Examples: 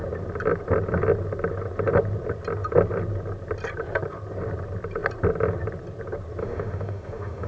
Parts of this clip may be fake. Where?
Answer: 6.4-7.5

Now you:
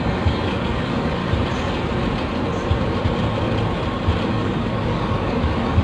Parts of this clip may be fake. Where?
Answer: 0.0-1.2; 4.3-5.8

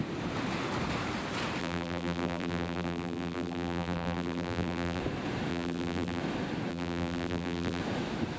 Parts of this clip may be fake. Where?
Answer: 1.6-5.0; 5.5-6.2; 6.7-7.8

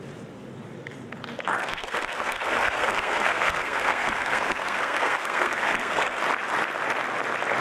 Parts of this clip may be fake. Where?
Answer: 1.6-6.2

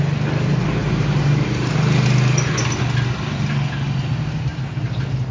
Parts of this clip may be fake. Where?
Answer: none

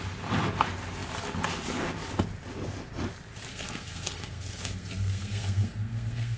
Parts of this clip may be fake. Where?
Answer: 3.5-6.4

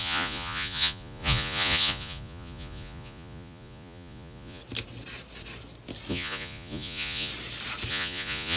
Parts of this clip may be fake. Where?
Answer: 0.0-4.6; 6.1-7.3; 7.9-8.6

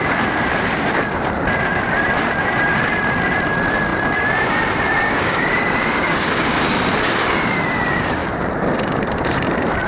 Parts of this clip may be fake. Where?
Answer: 5.0-6.5